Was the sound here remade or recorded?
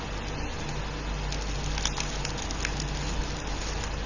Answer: recorded